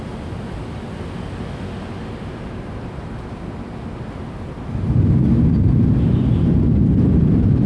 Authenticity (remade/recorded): recorded